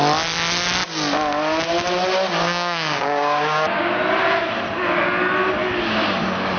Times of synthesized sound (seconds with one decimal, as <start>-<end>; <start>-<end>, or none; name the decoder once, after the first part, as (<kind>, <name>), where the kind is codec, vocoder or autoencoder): 2.4-3.9 (codec, DAC)